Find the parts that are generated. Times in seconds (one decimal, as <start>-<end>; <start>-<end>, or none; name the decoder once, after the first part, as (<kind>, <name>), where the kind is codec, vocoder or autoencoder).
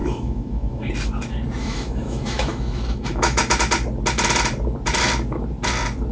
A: 0.0-0.9 (autoencoder, DAC-VAE); 1.6-3.4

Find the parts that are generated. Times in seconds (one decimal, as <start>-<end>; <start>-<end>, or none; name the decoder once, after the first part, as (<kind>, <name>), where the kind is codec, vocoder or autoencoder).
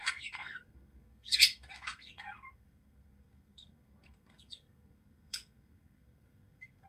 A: 0.0-6.9 (codec, SNAC)